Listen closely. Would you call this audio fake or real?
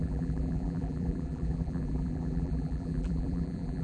fake